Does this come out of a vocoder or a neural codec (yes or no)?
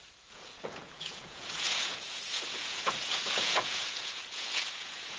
yes